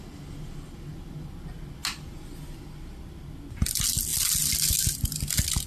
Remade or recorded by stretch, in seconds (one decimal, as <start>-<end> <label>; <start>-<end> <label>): 0.0-5.7 recorded